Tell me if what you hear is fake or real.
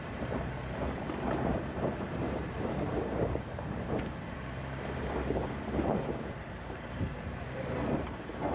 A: fake